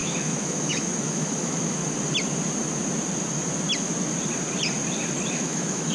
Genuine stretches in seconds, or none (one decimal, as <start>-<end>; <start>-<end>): 1.8-5.3

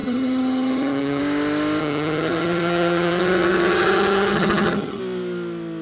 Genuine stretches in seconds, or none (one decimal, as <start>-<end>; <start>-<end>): 1.2-1.8; 5.0-5.8

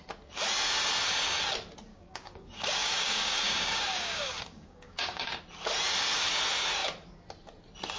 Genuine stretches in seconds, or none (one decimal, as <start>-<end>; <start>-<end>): 0.0-1.9; 5.4-8.0

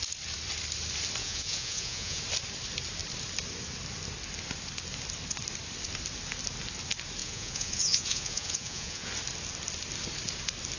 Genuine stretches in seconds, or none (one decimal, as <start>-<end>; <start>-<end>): 0.0-1.2; 2.2-7.2; 9.1-10.8